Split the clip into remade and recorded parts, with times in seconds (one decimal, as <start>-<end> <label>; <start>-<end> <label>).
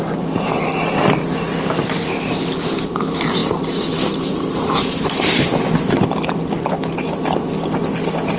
0.0-8.4 recorded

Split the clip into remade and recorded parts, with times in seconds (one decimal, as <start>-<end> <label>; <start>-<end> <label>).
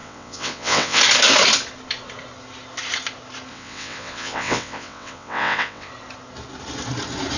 0.0-1.0 remade; 1.0-3.5 recorded; 3.5-5.9 remade; 5.9-7.4 recorded